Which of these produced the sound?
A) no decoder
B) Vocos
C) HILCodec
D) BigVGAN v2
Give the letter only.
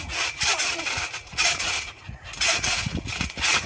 B